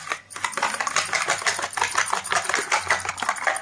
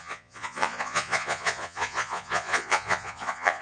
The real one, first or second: first